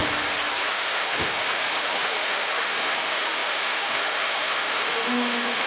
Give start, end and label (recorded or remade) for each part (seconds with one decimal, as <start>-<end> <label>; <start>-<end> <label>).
0.0-0.7 recorded; 0.7-5.7 remade